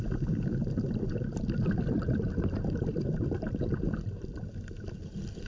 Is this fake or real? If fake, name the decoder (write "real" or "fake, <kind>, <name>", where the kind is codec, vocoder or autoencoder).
real